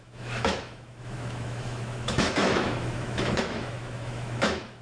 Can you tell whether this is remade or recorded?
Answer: remade